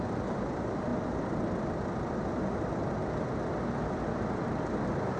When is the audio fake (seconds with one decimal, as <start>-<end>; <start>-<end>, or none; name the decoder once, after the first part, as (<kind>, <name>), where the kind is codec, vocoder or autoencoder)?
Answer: none